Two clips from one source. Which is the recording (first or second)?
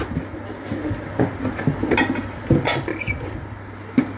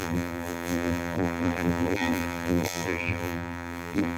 first